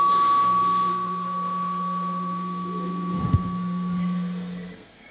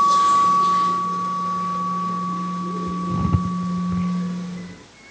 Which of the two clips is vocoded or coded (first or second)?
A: first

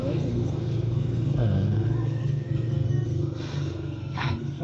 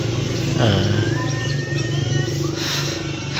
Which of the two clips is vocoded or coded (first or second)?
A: first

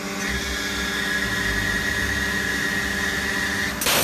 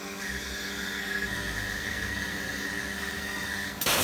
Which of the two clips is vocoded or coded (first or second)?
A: second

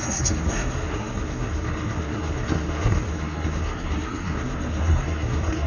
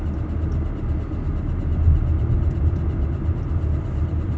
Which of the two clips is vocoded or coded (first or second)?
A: first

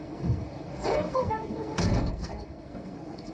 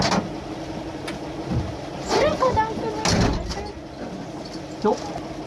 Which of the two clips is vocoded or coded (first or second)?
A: first